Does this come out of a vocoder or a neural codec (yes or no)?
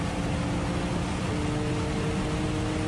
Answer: no